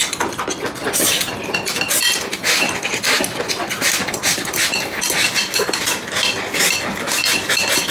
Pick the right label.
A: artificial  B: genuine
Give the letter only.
B